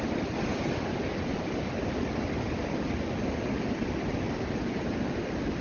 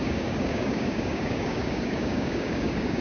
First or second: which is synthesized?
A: second